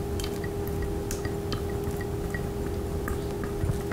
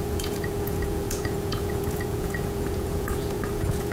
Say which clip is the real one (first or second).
first